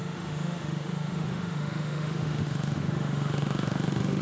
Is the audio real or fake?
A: fake